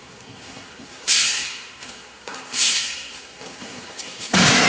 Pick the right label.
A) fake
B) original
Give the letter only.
A